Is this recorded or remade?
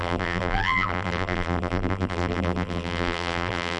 remade